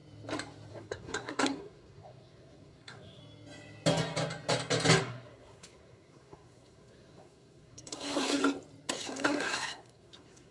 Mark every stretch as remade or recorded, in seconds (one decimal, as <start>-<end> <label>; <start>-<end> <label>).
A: 0.0-0.7 recorded; 0.7-3.2 remade; 3.2-5.0 recorded; 5.0-8.4 remade; 8.4-8.9 recorded; 8.9-10.5 remade